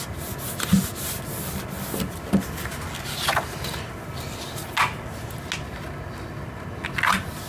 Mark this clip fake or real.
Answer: real